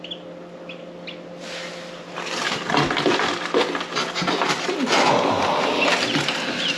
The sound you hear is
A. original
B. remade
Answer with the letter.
A